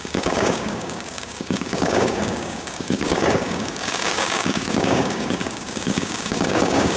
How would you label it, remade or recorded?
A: remade